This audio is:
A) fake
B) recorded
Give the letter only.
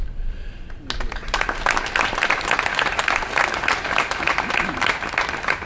B